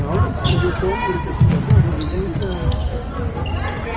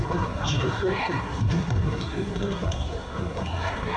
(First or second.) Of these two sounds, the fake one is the second